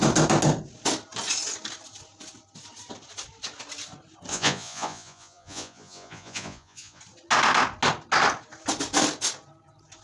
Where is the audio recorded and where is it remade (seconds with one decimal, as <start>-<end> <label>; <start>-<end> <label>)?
0.0-4.3 recorded; 4.3-7.0 remade; 7.0-10.0 recorded